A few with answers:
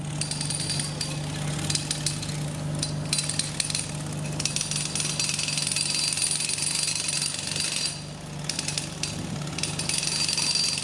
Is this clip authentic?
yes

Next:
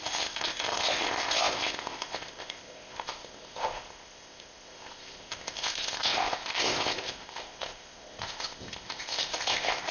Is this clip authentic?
no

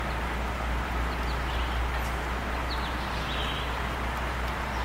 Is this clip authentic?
yes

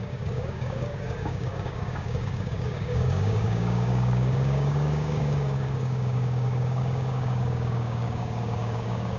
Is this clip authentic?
no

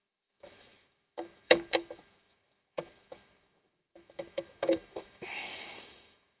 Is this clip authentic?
no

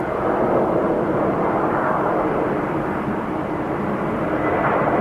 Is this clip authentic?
no